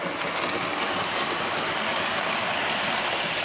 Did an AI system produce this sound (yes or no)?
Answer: no